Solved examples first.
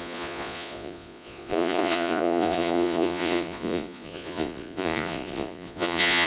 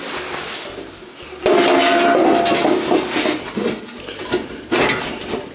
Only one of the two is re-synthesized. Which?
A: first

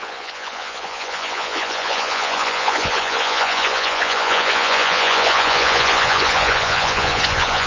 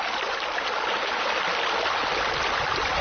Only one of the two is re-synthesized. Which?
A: first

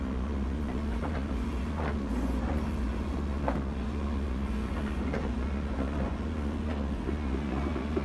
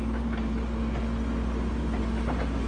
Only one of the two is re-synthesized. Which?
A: first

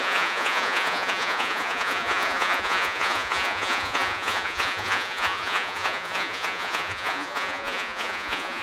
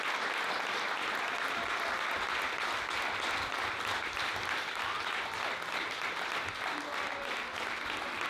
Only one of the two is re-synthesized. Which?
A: first